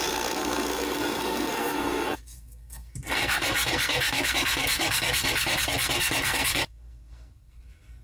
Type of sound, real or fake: fake